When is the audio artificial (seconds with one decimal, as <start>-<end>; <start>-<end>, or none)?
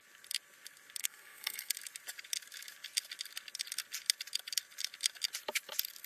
1.0-1.7